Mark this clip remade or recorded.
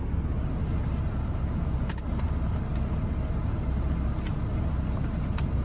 recorded